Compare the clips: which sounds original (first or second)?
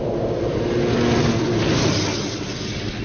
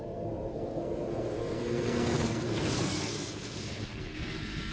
first